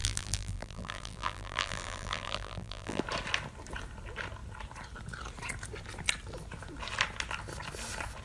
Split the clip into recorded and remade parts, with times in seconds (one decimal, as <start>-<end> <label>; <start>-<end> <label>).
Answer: 0.0-3.0 remade; 3.0-8.2 recorded